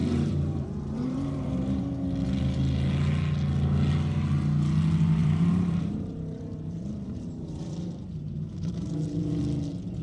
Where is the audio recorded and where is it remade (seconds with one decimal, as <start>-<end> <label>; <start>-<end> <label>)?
0.0-1.8 remade; 1.8-5.2 recorded; 5.2-9.4 remade; 9.4-10.0 recorded